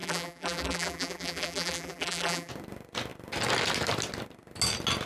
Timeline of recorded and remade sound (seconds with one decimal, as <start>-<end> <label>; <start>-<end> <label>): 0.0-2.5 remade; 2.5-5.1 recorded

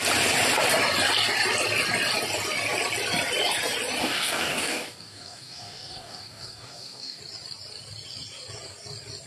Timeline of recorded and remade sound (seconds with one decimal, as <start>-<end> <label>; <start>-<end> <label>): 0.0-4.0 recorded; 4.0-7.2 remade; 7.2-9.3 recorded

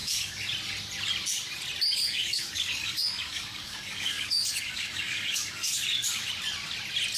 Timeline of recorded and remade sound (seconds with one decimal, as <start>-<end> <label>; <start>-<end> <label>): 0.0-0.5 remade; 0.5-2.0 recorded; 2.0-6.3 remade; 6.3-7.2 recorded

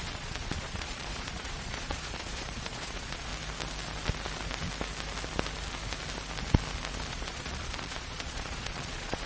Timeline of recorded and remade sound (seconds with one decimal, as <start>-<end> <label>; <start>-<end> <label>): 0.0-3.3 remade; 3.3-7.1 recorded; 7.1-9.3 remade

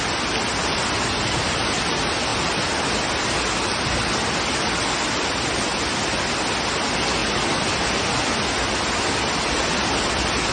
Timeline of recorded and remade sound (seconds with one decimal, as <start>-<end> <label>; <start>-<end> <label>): 0.0-10.5 recorded

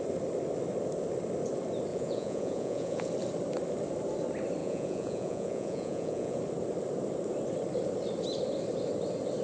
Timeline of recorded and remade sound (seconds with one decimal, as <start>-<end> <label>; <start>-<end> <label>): 0.0-1.9 recorded; 1.9-3.1 remade; 3.1-4.6 recorded; 4.6-6.4 remade; 6.4-9.4 recorded

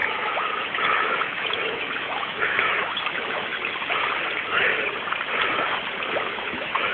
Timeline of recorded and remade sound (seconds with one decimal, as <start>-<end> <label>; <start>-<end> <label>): 0.0-3.5 remade; 3.5-6.3 recorded; 6.3-6.9 remade